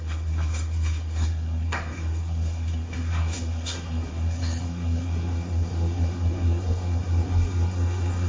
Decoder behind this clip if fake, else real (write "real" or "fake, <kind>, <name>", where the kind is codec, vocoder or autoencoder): fake, codec, SNAC